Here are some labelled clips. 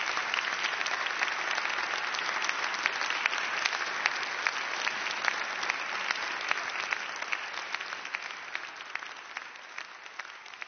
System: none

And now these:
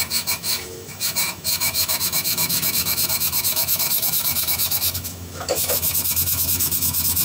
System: autoencoder, DAC-VAE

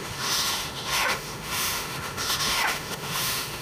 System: autoencoder, DAC-VAE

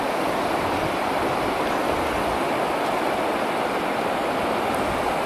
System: none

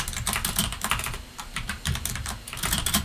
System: none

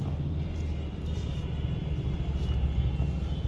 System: none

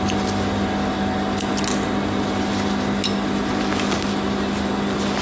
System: none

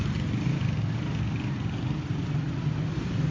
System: none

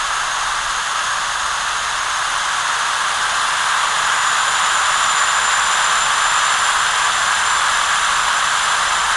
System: none